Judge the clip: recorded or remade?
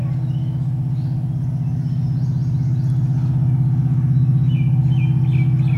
recorded